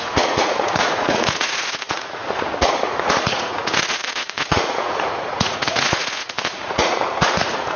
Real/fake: fake